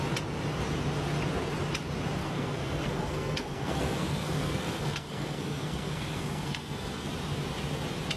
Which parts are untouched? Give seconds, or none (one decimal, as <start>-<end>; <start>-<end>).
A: 0.0-2.2; 7.1-8.2